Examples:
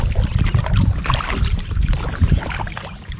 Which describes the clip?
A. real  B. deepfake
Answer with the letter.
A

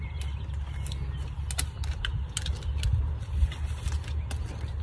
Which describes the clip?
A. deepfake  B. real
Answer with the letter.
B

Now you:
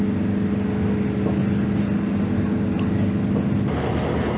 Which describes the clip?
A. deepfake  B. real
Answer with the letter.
B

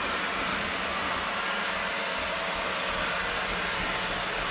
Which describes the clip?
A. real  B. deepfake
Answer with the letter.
A